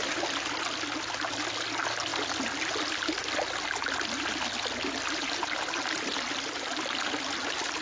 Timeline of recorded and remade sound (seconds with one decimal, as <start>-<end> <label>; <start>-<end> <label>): 0.0-7.8 recorded